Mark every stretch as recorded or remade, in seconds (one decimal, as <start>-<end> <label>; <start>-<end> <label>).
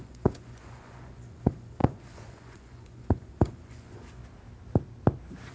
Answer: 0.0-4.2 remade; 4.2-5.5 recorded